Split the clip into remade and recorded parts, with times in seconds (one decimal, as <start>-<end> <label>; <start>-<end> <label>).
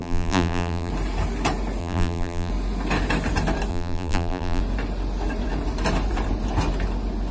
0.0-0.9 remade; 0.9-1.8 recorded; 1.8-2.5 remade; 2.5-3.7 recorded; 3.7-4.6 remade; 4.6-7.3 recorded